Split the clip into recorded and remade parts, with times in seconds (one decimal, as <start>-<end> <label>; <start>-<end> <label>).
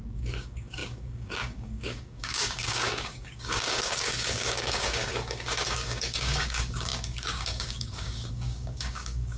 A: 0.0-9.4 remade